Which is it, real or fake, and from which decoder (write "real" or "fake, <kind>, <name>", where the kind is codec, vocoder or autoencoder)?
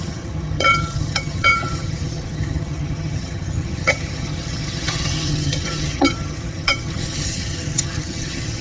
fake, vocoder, HiFi-GAN